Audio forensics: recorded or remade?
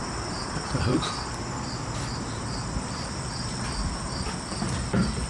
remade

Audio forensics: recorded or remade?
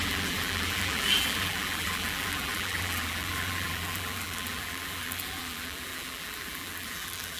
remade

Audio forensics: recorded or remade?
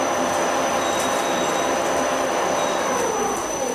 remade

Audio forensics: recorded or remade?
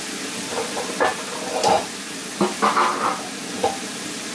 recorded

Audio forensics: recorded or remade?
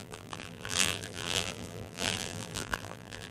remade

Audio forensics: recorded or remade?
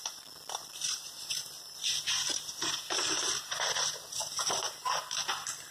recorded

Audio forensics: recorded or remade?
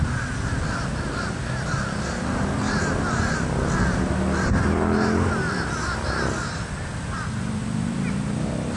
recorded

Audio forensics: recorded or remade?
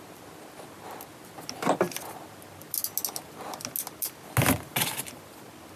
recorded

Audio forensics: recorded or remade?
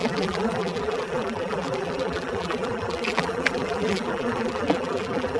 remade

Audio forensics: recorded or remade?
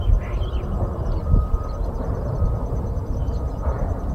remade